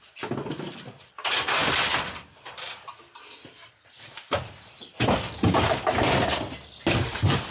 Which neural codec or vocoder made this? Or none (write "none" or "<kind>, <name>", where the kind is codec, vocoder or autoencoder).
none